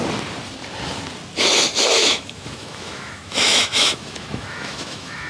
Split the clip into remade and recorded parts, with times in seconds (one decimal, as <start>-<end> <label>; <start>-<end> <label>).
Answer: 0.0-2.0 recorded; 2.0-5.3 remade